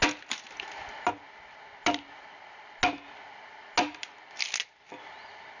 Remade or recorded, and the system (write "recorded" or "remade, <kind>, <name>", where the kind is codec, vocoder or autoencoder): recorded